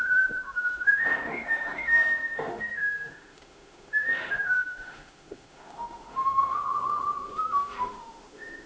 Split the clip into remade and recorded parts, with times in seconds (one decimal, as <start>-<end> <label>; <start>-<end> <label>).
0.0-8.7 remade